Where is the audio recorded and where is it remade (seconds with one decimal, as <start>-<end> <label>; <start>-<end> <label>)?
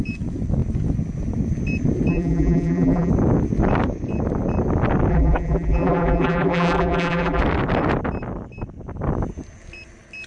0.0-2.1 recorded; 2.1-3.1 remade; 3.1-5.1 recorded; 5.1-7.4 remade; 7.4-10.3 recorded